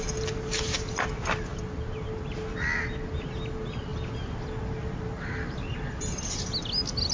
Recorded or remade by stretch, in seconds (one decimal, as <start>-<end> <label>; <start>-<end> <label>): 0.0-7.1 recorded